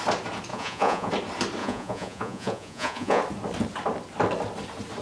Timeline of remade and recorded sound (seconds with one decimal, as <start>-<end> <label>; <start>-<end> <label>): 0.0-0.5 recorded; 0.5-1.1 remade; 1.1-1.6 recorded; 1.6-3.2 remade; 3.2-5.0 recorded